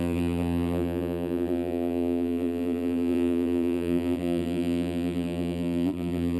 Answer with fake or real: fake